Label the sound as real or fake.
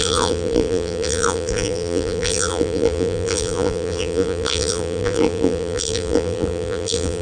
fake